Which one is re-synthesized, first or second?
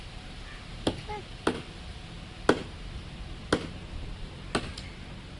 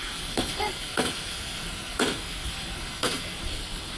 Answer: second